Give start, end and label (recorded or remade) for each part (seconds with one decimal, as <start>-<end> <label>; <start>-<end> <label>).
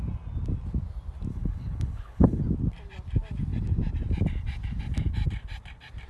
0.0-1.3 recorded; 1.3-2.4 remade; 2.4-6.1 recorded